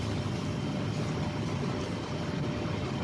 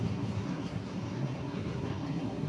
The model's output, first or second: second